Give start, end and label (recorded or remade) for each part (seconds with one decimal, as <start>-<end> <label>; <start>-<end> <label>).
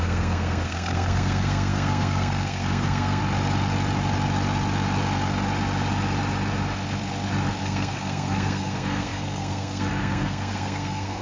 0.0-3.2 remade; 3.2-7.6 recorded; 7.6-11.2 remade